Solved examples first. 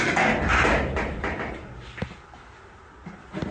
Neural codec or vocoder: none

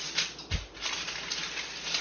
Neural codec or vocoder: none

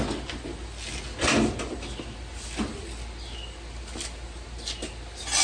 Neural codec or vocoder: none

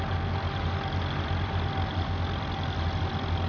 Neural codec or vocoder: none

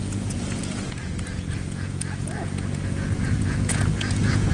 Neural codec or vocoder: vocoder, Vocos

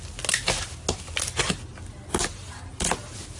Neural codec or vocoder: none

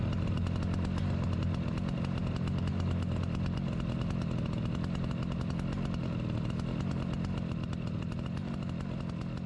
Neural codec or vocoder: none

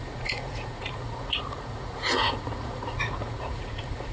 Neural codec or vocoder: vocoder, Vocos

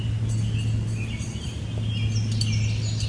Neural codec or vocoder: none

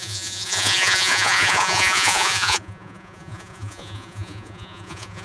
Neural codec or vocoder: vocoder, Vocos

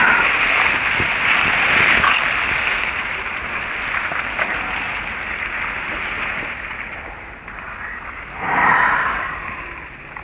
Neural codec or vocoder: none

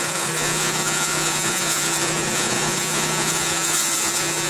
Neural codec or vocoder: vocoder, Vocos